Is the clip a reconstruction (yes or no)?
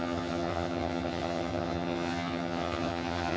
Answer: yes